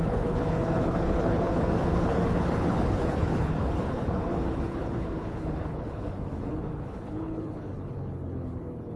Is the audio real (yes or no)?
no